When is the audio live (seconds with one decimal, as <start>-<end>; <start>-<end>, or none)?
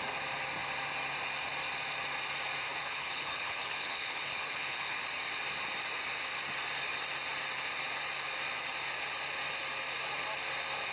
0.0-2.8; 5.0-10.9